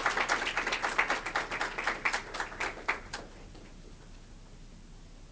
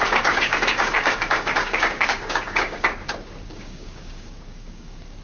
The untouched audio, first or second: first